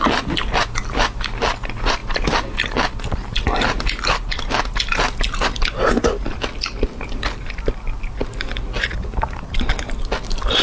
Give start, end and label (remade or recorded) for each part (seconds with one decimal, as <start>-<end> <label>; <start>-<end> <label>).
0.0-10.6 recorded